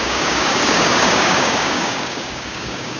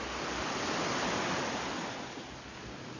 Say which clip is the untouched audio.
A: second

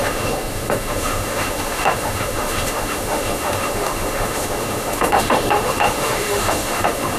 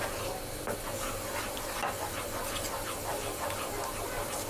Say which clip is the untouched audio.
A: second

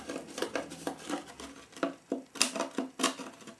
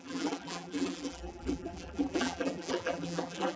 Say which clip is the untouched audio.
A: first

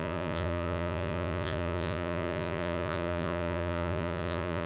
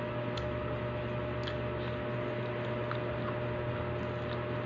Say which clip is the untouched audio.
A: second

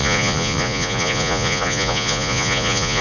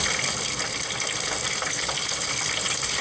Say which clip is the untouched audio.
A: second